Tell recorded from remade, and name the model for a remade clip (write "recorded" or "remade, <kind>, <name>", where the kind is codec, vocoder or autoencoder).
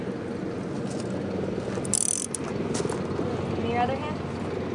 recorded